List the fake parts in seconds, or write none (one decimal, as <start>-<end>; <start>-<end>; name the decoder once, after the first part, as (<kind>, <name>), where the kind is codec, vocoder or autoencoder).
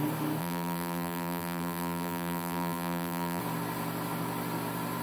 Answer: 0.4-3.4 (vocoder, BigVGAN v2)